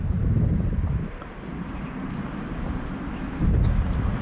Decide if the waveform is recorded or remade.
recorded